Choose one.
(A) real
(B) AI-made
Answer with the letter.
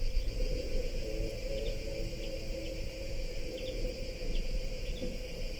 B